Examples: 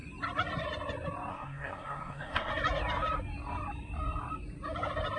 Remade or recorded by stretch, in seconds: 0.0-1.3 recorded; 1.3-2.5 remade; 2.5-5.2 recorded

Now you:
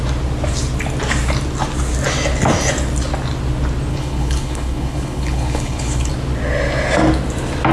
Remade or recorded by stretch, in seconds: 0.0-3.9 recorded; 3.9-6.1 remade; 6.1-7.7 recorded

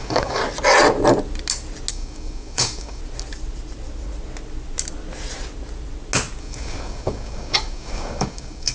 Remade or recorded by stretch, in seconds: 0.0-0.4 remade; 0.4-1.9 recorded; 1.9-3.0 remade; 3.0-6.4 recorded; 6.4-8.7 remade

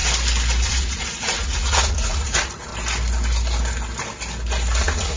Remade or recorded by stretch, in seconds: 0.0-0.6 recorded; 0.6-2.7 remade; 2.7-4.8 recorded; 4.8-5.2 remade

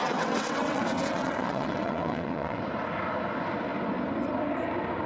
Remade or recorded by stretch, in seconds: 0.0-2.6 remade; 2.6-5.1 recorded

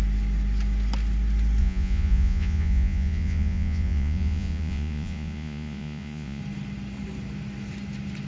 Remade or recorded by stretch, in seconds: 0.0-1.6 recorded; 1.6-6.4 remade; 6.4-8.3 recorded

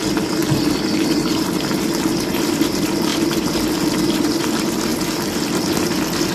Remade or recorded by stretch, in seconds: 0.0-0.4 recorded; 0.4-2.5 remade; 2.5-3.1 recorded; 3.1-3.7 remade; 3.7-6.3 recorded